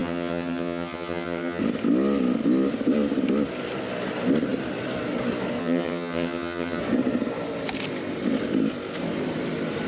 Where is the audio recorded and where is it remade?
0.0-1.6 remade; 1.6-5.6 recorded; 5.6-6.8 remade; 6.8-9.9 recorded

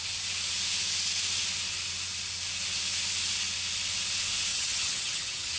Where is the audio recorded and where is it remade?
0.0-4.5 recorded; 4.5-5.6 remade

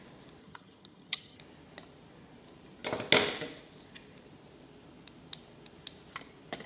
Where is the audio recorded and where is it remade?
0.0-0.4 recorded; 0.4-1.4 remade; 1.4-6.7 recorded